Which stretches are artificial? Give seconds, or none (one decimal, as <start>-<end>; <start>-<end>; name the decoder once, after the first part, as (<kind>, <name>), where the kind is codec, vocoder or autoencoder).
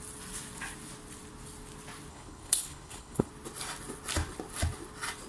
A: 2.1-3.3 (codec, HILCodec)